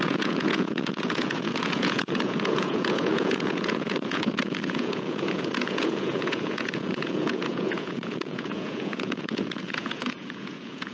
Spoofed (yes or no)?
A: yes